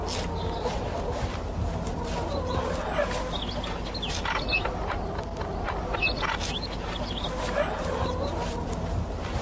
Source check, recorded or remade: recorded